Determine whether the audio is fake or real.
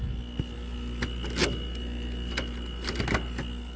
real